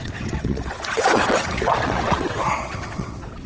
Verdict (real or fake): fake